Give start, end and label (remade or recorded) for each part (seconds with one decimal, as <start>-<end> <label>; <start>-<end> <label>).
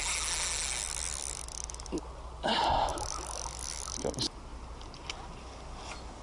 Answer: 0.0-6.2 recorded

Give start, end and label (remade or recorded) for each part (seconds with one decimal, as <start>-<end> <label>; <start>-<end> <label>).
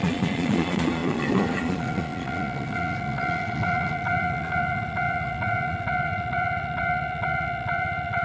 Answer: 0.0-8.2 remade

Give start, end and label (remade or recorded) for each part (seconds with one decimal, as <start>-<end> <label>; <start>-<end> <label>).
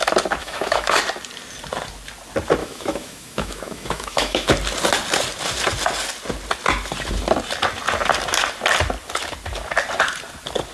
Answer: 0.0-0.4 recorded; 0.4-1.0 remade; 1.0-2.6 recorded; 2.6-4.5 remade; 4.5-10.7 recorded